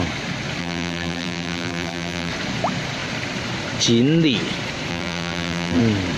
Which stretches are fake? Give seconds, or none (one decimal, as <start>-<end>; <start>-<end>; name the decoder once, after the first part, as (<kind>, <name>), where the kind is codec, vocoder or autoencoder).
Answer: 0.6-2.3 (vocoder, BigVGAN v2); 4.9-5.8